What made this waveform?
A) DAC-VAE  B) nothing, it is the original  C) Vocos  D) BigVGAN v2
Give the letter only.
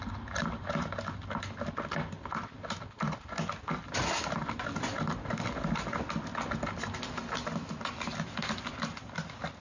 B